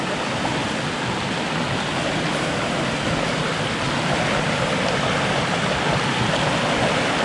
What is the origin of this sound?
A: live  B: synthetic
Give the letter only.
A